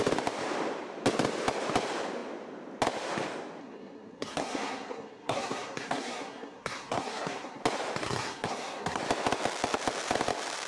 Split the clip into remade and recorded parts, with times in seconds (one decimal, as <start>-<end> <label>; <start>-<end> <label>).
0.0-3.6 recorded; 3.6-7.6 remade; 7.6-8.0 recorded; 8.0-9.0 remade; 9.0-10.7 recorded